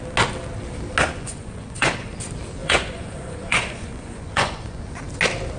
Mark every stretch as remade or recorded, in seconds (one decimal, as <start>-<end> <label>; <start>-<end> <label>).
0.0-1.0 recorded; 1.0-2.2 remade; 2.2-2.6 recorded; 2.6-4.8 remade; 4.8-5.6 recorded